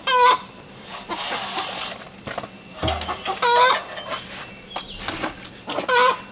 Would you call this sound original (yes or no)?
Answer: yes